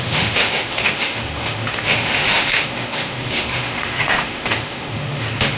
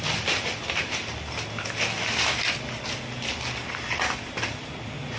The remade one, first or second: first